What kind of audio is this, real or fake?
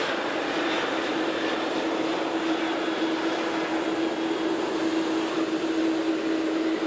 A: real